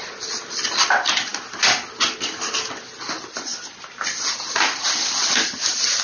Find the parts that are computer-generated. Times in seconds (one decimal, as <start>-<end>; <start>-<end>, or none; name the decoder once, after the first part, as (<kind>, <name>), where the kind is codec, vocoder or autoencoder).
none